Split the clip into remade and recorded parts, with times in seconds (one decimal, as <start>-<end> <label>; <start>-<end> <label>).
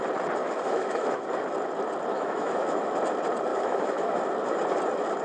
0.0-0.4 recorded; 0.4-1.2 remade; 1.2-2.1 recorded; 2.1-2.9 remade; 2.9-3.5 recorded; 3.5-4.2 remade; 4.2-5.2 recorded